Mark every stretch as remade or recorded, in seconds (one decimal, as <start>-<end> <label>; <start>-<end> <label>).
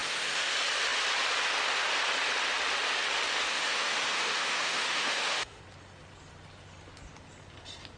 0.0-0.5 remade; 0.5-3.5 recorded; 3.5-5.6 remade; 5.6-8.0 recorded